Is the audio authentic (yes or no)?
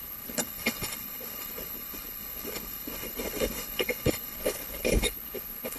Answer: no